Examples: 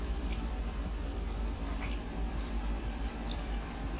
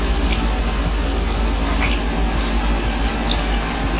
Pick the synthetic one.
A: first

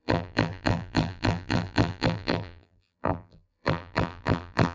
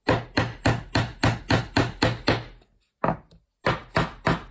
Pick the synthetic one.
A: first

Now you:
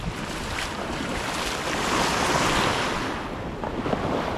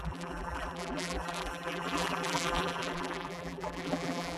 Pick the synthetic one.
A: second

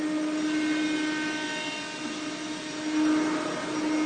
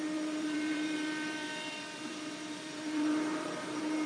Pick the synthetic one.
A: second